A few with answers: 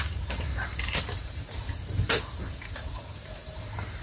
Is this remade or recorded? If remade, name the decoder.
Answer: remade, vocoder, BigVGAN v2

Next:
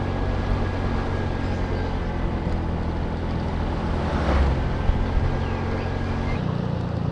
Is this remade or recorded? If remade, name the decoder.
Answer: recorded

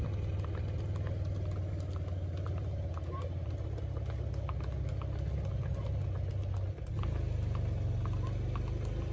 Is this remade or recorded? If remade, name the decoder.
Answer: recorded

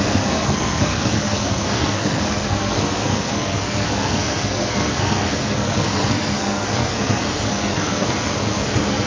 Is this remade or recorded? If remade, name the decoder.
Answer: remade, codec, SNAC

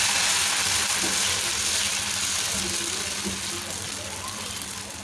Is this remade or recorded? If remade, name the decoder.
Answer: recorded